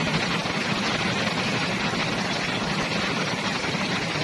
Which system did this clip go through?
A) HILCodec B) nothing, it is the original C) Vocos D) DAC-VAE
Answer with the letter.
B